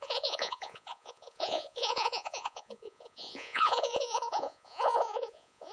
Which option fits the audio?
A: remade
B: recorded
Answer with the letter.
A